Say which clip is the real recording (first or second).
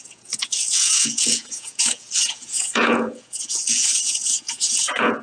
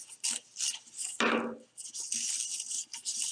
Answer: second